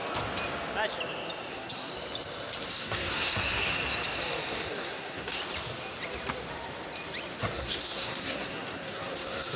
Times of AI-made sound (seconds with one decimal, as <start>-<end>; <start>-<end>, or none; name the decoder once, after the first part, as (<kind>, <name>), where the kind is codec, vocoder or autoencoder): 1.5-1.9 (codec, SNAC); 2.7-3.7; 4.7-5.4; 7.4-9.6